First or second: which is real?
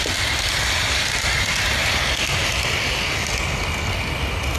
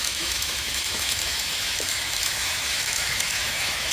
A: first